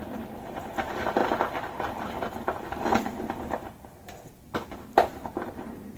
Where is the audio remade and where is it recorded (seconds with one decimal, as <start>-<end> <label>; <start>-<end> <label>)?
0.0-6.0 recorded